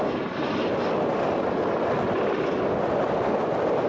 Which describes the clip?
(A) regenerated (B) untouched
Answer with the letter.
B